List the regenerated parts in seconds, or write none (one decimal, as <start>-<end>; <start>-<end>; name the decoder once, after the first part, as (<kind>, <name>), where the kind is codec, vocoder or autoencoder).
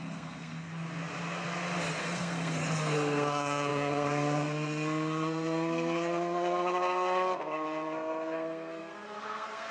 0.0-0.7 (codec, SNAC); 2.0-9.7